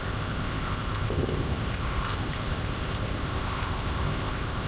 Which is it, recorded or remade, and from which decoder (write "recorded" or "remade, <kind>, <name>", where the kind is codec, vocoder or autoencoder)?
remade, codec, ZipCodec